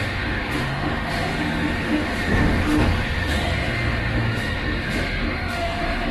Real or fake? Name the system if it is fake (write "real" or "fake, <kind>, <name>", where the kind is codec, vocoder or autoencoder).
fake, autoencoder, DAC-VAE